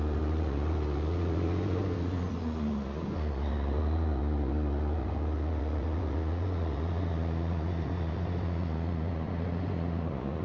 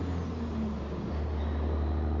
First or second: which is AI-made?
first